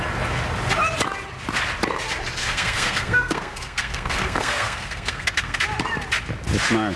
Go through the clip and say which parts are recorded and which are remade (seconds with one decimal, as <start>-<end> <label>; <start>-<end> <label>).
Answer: 0.0-2.4 recorded; 2.4-5.6 remade; 5.6-7.0 recorded